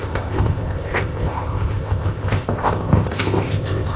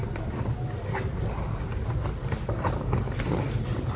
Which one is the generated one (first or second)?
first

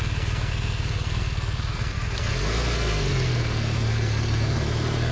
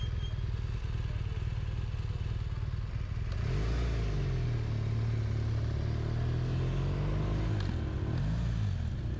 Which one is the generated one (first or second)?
first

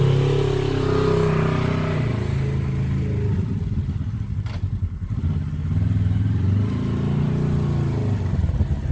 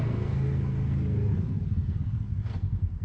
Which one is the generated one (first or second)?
second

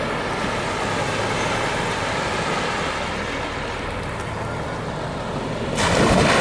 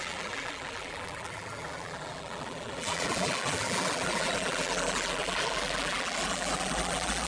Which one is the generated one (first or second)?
second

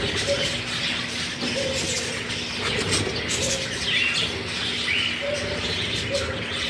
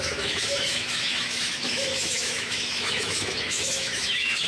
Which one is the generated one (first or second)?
second